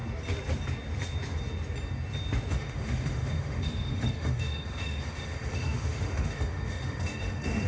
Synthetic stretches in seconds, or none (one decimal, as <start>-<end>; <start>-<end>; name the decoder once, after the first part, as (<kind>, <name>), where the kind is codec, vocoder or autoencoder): 2.5-7.7 (autoencoder, DAC-VAE)